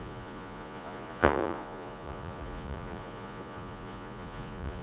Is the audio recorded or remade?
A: remade